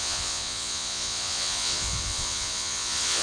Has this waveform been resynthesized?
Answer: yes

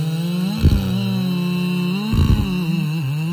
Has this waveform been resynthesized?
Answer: no